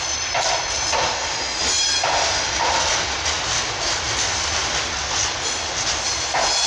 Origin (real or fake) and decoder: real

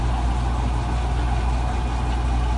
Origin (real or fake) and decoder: real